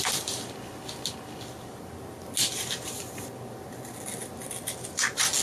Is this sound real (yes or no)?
yes